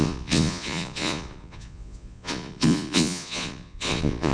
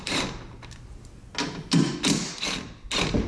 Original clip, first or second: second